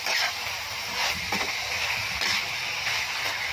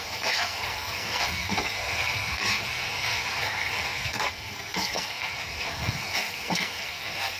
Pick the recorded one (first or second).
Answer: first